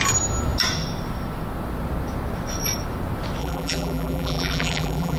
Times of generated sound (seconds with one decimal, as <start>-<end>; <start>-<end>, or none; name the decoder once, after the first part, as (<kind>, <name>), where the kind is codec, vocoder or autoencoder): 3.4-5.2 (vocoder, BigVGAN v2)